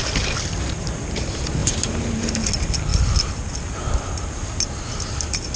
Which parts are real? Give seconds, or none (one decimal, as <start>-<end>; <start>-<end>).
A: 0.0-1.6; 2.3-5.6